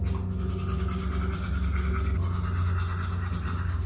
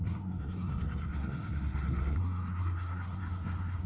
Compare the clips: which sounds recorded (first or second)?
first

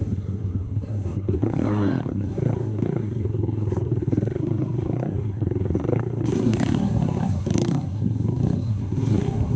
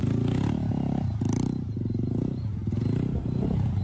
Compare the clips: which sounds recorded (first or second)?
second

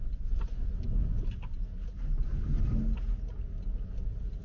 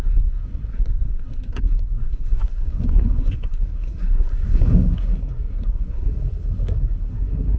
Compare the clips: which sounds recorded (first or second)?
first